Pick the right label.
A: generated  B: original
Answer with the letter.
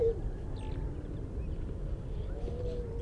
B